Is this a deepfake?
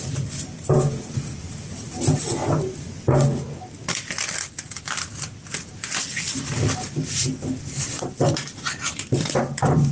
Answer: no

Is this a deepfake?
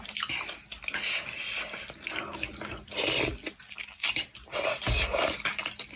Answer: no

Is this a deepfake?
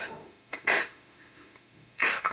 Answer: yes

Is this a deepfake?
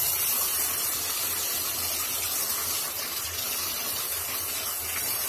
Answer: no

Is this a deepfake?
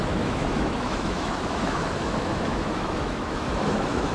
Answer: yes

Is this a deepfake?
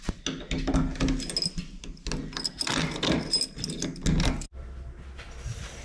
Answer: no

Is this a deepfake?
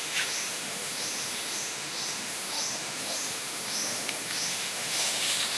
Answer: yes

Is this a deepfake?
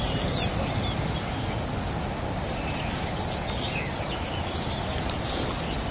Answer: no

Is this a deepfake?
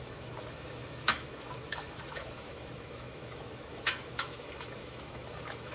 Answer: yes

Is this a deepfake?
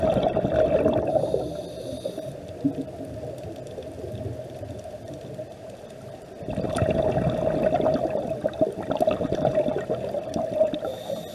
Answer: no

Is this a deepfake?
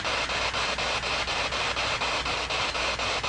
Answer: no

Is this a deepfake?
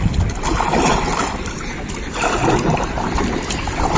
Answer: no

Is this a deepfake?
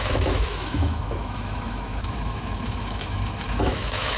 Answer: yes